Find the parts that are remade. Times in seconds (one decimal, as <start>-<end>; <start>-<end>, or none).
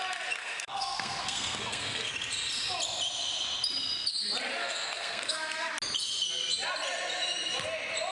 0.4-2.1; 4.6-5.7